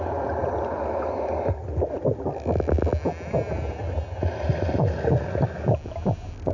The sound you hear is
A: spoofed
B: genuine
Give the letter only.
B